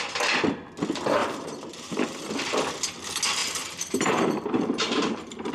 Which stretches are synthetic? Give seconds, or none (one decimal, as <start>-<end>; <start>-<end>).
1.2-2.3; 3.4-5.5